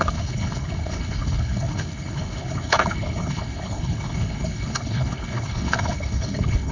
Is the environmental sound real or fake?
fake